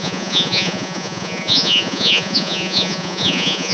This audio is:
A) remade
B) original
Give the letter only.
A